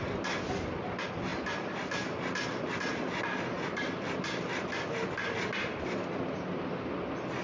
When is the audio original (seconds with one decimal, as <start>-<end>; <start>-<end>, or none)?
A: 0.0-7.4